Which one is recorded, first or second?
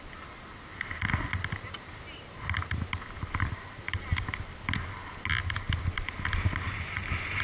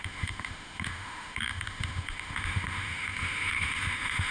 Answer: first